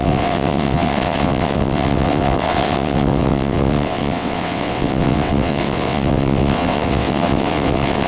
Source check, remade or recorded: remade